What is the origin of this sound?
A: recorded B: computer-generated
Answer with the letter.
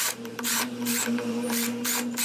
B